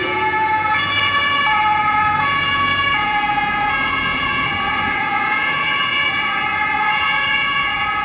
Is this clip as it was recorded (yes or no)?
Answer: no